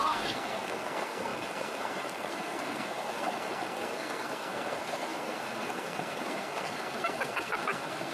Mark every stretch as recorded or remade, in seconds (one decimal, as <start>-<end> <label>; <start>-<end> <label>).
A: 0.0-8.1 remade